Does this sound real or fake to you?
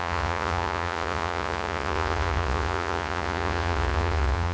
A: fake